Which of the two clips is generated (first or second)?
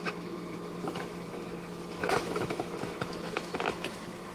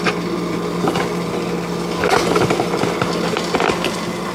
first